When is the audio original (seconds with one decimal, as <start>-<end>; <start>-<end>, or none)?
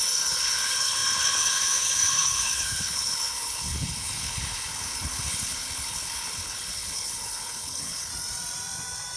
8.1-9.2